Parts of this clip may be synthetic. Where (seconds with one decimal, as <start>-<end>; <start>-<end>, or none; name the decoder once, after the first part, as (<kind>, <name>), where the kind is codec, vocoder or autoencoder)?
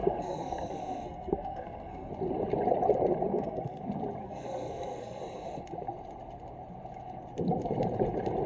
0.0-2.1 (codec, SNAC); 3.3-3.8; 4.2-5.2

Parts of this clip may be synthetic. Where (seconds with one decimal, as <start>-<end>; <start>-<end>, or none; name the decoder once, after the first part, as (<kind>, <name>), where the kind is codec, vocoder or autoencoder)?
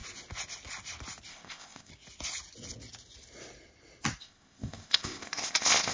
1.3-1.9 (codec, ZipCodec); 4.2-5.9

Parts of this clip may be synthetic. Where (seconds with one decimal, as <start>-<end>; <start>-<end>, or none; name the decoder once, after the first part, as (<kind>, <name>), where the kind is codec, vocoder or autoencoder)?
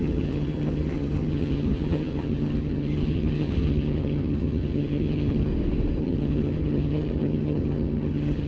0.0-5.5 (vocoder, HiFi-GAN); 6.0-8.5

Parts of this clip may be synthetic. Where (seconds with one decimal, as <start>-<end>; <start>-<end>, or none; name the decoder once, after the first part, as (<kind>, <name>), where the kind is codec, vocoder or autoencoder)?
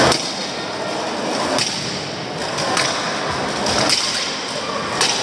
none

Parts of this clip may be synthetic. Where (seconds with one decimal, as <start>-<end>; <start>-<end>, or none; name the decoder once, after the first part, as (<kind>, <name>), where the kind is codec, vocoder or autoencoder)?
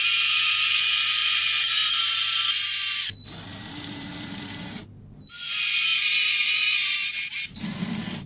1.2-2.2 (vocoder, BigVGAN v2); 3.5-4.9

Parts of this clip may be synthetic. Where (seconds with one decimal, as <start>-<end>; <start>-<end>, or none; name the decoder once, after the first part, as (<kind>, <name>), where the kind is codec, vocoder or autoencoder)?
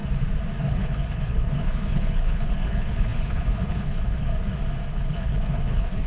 0.6-4.3 (codec, HILCodec); 4.9-6.1